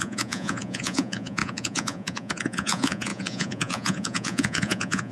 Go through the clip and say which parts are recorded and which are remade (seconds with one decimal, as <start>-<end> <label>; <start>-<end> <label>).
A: 0.0-5.1 remade